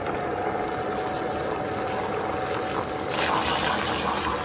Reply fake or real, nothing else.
real